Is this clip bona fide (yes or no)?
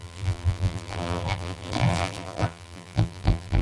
no